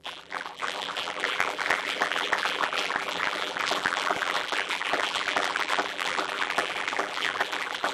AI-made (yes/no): yes